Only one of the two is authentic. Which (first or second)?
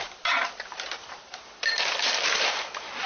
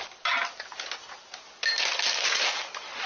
second